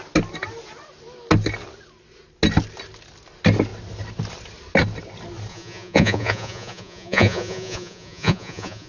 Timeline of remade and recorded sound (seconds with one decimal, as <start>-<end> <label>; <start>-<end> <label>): 0.0-5.5 recorded; 5.5-8.9 remade